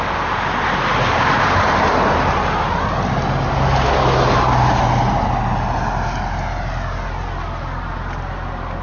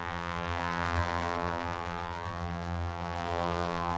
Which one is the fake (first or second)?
second